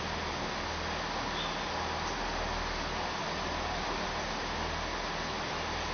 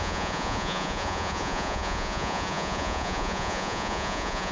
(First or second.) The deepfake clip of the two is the second